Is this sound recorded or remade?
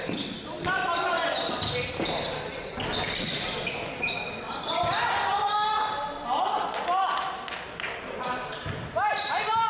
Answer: recorded